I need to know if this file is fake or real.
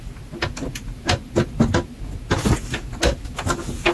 real